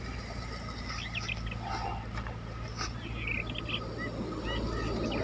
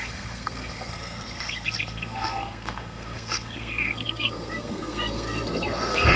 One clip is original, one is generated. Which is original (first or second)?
first